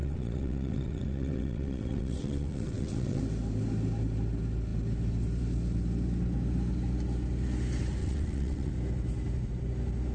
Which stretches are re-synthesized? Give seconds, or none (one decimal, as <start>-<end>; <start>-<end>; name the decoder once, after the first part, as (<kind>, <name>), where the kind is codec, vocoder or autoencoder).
0.0-3.2 (vocoder, WaveNeXt); 8.0-8.7